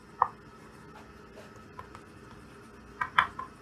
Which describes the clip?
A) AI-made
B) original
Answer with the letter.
B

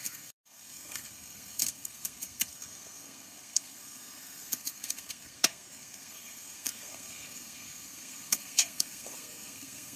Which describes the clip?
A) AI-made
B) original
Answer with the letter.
A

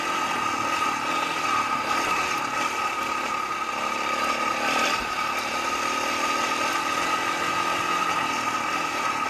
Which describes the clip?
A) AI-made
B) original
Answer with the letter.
B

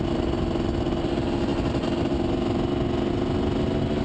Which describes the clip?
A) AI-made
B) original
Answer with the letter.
B